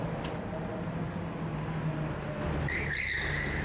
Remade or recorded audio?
recorded